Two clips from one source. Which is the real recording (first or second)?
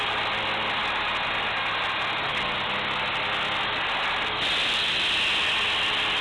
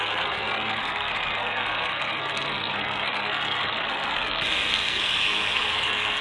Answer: first